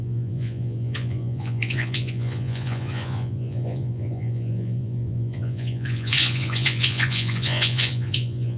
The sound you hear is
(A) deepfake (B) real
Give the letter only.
A